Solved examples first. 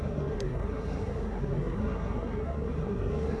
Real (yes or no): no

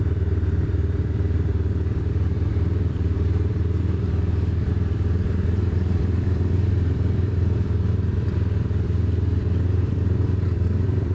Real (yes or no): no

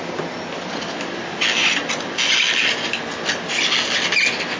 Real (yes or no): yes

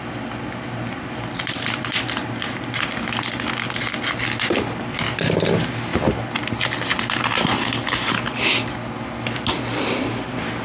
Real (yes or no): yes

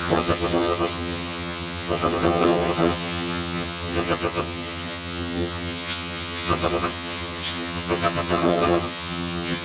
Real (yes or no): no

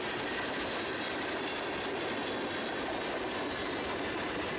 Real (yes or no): yes